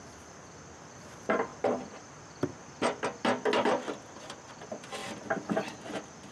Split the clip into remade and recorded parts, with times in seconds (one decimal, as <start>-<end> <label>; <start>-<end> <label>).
0.0-6.3 recorded